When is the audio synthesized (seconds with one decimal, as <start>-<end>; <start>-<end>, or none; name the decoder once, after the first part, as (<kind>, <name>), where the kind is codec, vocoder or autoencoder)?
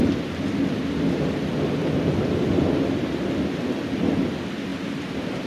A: 4.7-5.5 (vocoder, BigVGAN v2)